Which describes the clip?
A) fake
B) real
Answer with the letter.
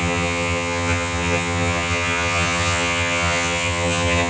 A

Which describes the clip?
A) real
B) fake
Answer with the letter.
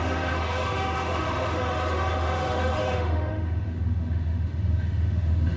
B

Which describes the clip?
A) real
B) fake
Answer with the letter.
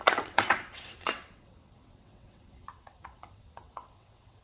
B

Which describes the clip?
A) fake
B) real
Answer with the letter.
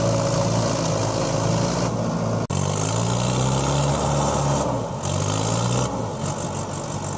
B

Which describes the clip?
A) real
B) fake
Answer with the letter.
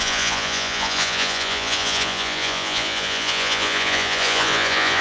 B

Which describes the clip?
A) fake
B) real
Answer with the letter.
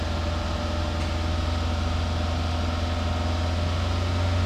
B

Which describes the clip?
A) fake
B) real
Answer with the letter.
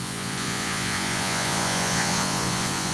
A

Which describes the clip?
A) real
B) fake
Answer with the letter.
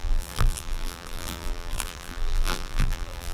B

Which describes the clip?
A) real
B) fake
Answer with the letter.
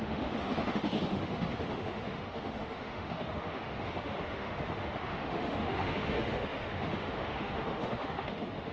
B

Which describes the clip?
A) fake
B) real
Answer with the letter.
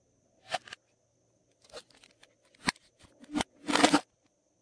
B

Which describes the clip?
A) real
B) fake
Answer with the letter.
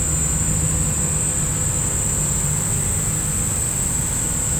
A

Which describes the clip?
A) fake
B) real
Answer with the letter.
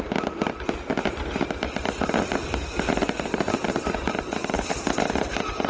B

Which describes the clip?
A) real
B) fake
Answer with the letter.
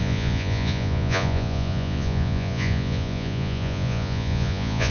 B